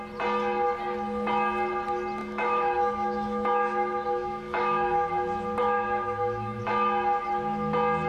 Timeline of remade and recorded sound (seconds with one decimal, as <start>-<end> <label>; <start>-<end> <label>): 0.0-2.2 recorded; 2.2-5.1 remade; 5.1-5.6 recorded; 5.6-6.6 remade; 6.6-8.1 recorded